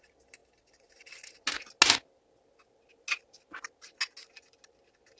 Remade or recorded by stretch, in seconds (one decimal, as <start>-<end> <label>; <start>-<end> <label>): 0.0-5.2 recorded